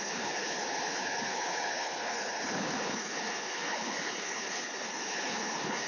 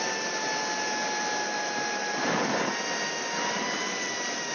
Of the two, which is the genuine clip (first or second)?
second